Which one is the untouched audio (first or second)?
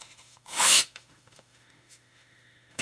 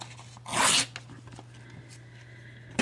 second